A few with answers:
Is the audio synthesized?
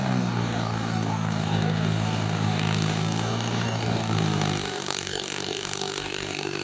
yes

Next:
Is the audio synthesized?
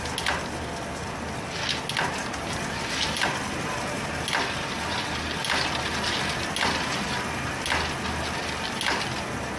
no